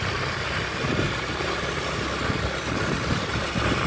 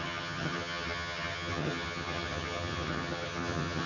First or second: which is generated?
second